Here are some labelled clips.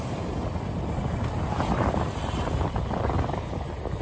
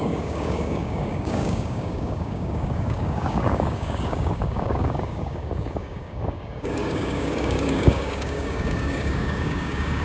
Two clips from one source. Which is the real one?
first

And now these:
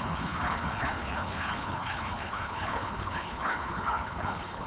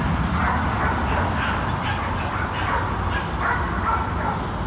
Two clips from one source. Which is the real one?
second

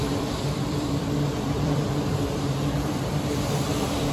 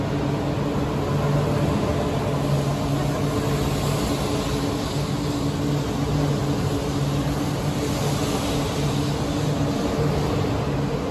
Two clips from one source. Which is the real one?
second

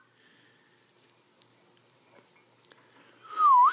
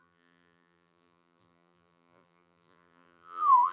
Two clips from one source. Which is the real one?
first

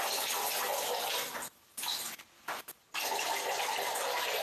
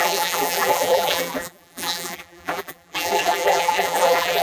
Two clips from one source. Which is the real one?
first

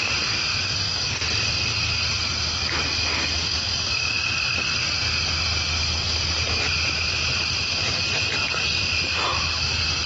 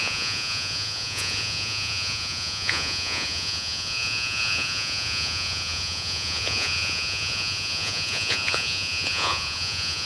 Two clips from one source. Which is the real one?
first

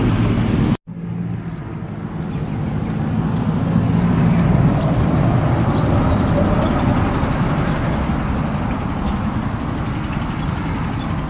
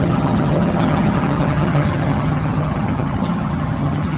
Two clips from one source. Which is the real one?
first